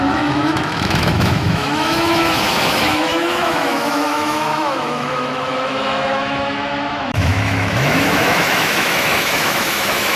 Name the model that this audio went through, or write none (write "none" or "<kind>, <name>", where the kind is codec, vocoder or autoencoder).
autoencoder, DAC-VAE